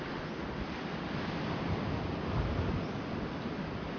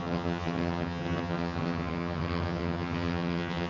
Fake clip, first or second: second